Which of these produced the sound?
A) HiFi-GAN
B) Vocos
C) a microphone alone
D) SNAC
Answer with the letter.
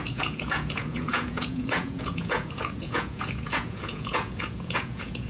B